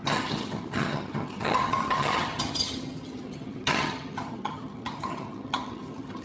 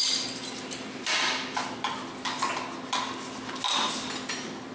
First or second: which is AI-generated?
first